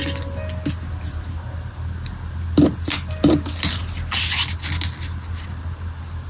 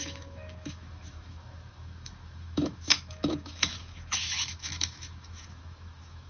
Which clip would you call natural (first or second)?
first